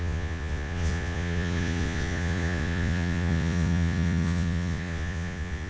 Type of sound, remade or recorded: remade